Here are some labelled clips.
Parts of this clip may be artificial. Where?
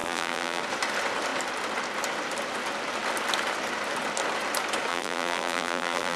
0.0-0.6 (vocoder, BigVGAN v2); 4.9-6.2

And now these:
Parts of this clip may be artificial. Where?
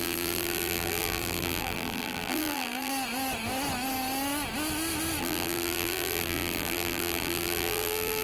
0.0-2.9 (vocoder, BigVGAN v2); 5.2-8.2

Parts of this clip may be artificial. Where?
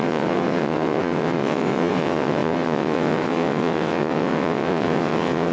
0.0-5.5 (vocoder, WaveNeXt)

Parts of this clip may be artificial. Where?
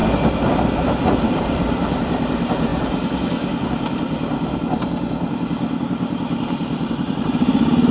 0.7-2.7 (vocoder, BigVGAN v2); 6.9-7.9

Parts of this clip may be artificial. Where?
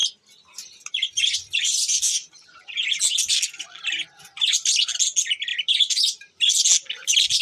0.0-3.0 (vocoder, BigVGAN v2); 5.5-6.5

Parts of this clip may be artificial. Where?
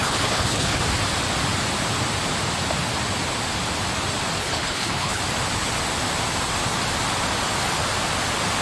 0.0-0.8 (codec, HILCodec); 4.4-5.2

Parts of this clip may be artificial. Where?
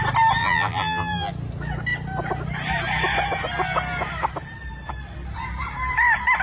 0.4-1.3 (vocoder, BigVGAN v2)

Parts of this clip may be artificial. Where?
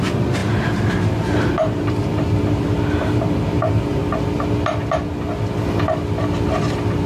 0.0-4.0 (vocoder, BigVGAN v2)